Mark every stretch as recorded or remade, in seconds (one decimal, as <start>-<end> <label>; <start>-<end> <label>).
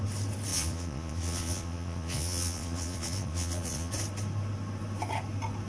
0.0-0.5 recorded; 0.5-3.9 remade; 3.9-5.7 recorded